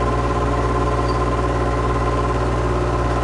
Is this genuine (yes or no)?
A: yes